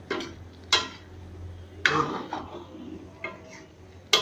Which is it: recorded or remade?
recorded